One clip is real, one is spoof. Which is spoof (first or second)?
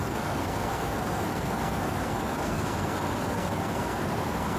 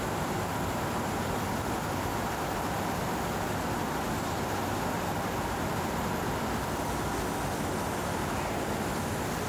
first